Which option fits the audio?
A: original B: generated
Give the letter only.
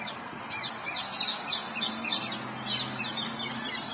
A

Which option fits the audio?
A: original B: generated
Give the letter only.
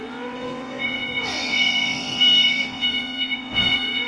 B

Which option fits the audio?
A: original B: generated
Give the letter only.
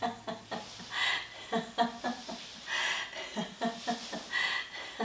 A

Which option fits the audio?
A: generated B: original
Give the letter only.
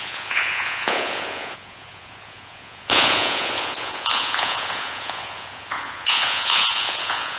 A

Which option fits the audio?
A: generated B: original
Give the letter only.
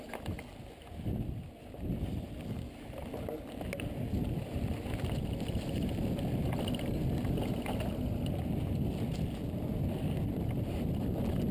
B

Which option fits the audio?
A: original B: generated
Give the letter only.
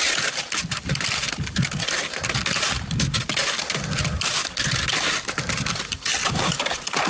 A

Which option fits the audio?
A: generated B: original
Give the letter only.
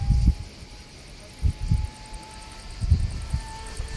B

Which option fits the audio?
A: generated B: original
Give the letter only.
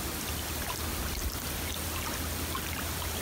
B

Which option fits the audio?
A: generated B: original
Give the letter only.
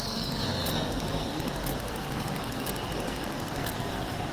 A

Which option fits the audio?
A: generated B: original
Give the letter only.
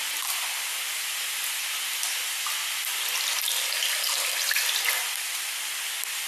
B